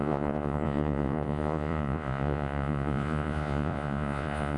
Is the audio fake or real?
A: fake